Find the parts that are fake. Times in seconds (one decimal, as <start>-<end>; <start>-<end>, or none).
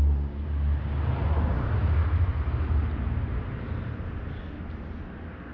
none